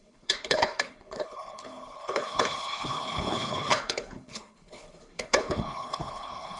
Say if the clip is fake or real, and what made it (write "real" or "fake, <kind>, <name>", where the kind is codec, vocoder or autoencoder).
fake, codec, HILCodec